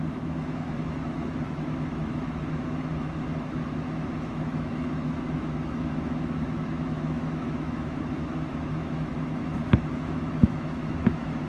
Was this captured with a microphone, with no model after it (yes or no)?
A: no